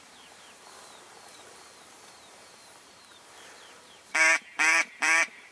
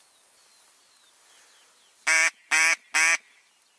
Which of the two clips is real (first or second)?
second